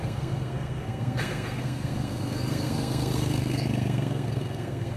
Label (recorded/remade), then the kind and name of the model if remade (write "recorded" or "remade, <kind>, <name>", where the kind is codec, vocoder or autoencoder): remade, codec, SNAC